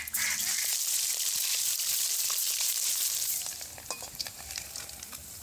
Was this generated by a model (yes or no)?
yes